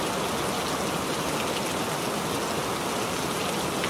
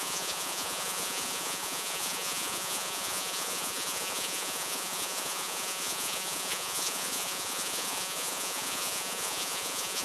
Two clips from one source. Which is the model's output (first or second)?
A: second